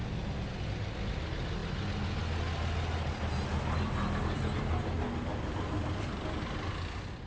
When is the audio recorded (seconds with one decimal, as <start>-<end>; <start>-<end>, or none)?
0.0-7.3